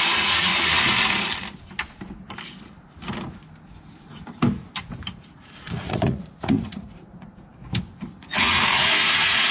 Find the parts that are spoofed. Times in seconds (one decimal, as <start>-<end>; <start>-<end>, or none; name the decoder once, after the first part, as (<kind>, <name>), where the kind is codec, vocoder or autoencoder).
0.0-0.5 (vocoder, Vocos); 5.7-7.5; 8.2-9.5